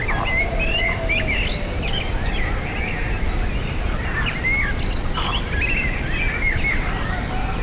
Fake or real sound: real